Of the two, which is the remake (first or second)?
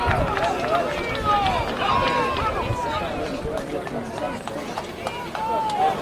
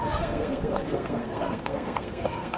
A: second